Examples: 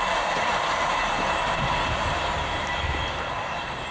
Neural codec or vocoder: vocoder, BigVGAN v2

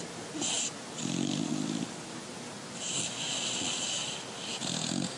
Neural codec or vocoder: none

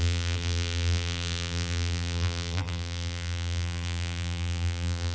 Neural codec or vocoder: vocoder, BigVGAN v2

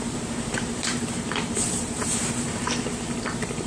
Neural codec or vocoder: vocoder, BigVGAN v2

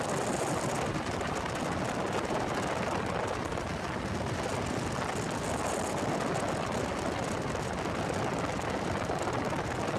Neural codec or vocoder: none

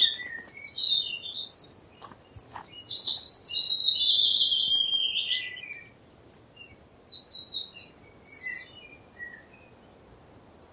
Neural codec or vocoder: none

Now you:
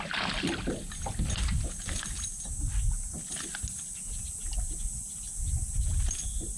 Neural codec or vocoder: none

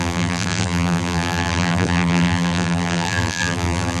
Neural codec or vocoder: vocoder, BigVGAN v2